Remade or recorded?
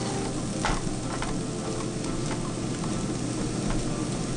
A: recorded